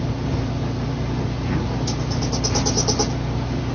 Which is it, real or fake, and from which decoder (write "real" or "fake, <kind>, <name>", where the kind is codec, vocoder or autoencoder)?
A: real